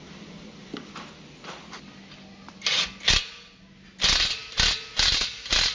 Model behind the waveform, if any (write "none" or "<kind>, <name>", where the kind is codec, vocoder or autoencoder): none